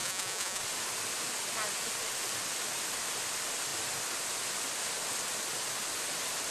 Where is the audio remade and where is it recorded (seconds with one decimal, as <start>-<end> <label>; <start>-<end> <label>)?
0.0-0.6 remade; 0.6-6.5 recorded